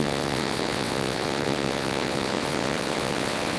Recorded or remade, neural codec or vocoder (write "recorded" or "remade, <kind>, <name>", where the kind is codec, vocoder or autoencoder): remade, vocoder, WaveNeXt